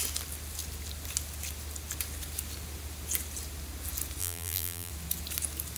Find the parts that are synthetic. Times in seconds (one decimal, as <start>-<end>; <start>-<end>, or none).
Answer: 4.2-4.9